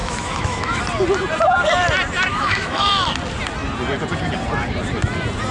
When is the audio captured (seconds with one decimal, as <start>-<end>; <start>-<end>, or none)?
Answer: 0.8-2.3; 3.1-5.5